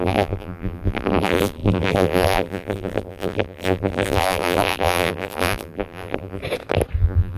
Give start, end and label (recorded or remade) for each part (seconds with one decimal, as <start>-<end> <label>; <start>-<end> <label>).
0.0-6.4 remade; 6.4-7.0 recorded; 7.0-7.4 remade